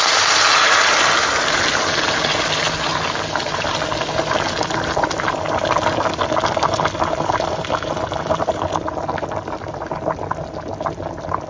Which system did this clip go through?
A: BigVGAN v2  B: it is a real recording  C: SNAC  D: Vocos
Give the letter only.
B